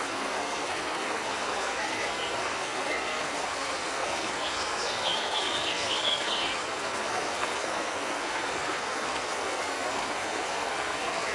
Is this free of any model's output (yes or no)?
no